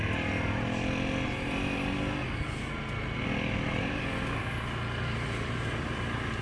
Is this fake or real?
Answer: real